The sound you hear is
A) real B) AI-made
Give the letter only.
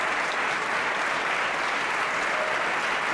A